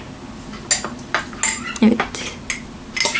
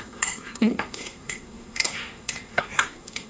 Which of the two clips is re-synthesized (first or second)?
second